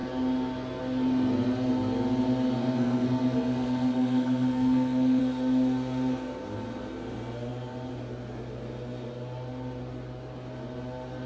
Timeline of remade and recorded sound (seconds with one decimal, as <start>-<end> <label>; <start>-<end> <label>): 0.0-2.6 recorded; 2.6-5.2 remade; 5.2-11.3 recorded

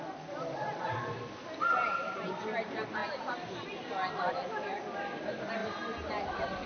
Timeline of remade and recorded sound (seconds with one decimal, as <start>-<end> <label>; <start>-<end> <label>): 0.0-6.7 recorded

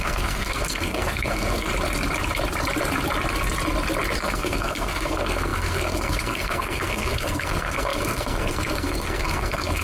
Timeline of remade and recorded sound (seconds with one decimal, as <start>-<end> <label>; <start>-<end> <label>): 0.0-1.7 remade; 1.7-4.2 recorded; 4.2-9.8 remade

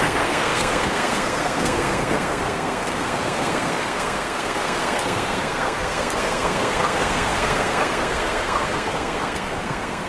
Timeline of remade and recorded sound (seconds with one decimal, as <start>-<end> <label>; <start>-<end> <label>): 0.0-10.1 remade